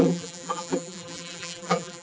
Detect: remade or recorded remade